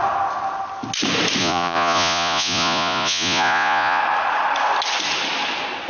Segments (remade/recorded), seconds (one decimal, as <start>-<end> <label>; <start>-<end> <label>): 0.0-1.4 recorded; 1.4-4.0 remade; 4.0-5.9 recorded